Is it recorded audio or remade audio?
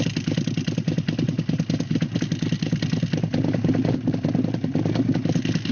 recorded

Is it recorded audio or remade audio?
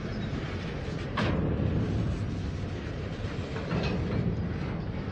recorded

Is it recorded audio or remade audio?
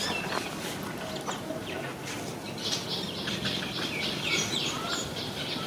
recorded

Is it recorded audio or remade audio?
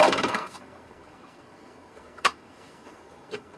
remade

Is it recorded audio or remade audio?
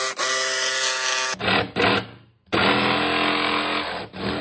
recorded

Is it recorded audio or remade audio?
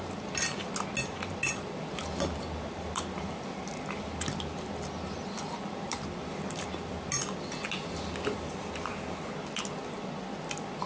recorded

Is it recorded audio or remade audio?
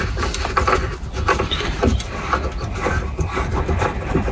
recorded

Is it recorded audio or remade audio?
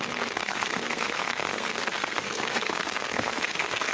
remade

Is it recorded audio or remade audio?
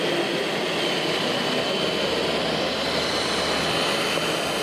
recorded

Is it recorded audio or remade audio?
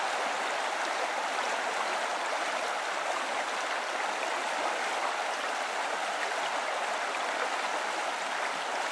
recorded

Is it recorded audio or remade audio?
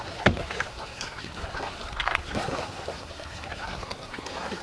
remade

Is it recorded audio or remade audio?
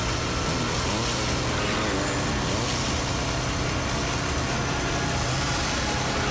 recorded